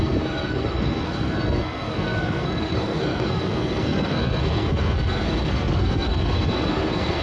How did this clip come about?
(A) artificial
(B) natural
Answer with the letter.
A